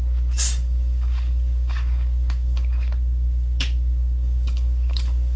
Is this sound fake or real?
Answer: fake